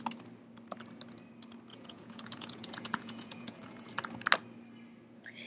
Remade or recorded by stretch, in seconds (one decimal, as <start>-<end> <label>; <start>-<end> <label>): 0.0-1.7 recorded; 1.7-3.9 remade; 3.9-5.5 recorded